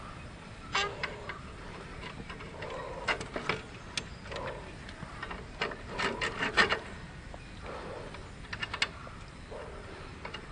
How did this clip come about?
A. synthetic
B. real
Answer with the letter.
B